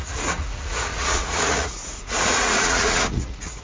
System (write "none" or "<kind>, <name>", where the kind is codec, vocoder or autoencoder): vocoder, Vocos